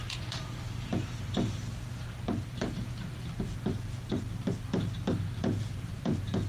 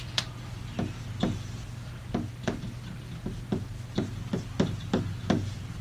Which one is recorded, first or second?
second